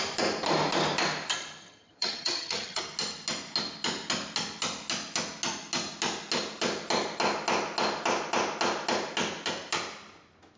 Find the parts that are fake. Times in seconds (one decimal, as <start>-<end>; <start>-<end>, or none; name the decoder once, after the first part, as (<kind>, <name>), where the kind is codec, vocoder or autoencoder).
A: 1.6-2.8 (vocoder, HiFi-GAN)